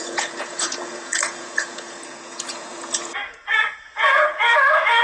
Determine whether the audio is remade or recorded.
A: remade